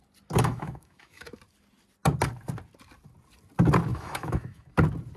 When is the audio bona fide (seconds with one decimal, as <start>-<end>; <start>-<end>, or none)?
0.0-0.5; 1.4-3.9; 4.7-5.2